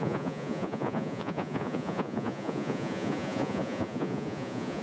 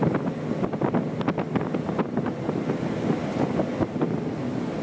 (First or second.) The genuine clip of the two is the second